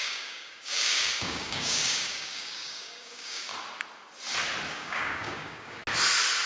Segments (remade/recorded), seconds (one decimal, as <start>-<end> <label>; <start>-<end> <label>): 0.0-3.5 remade; 3.5-4.7 recorded; 4.7-5.8 remade; 5.8-6.5 recorded